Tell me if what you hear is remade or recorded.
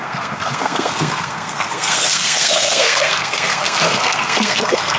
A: remade